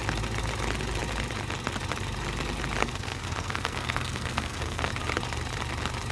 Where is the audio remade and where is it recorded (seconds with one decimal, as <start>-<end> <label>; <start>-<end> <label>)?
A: 0.0-2.8 recorded; 2.8-4.9 remade; 4.9-6.1 recorded